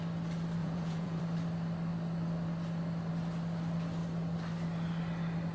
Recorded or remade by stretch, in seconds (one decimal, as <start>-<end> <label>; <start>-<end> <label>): 0.0-0.6 recorded; 0.6-1.2 remade; 1.2-5.5 recorded